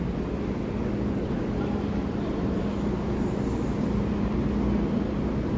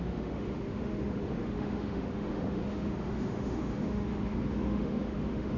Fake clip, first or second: second